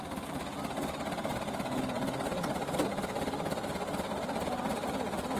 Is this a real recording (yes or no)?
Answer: yes